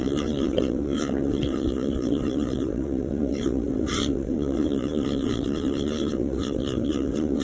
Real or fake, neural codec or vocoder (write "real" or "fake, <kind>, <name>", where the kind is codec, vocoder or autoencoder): fake, vocoder, WaveNeXt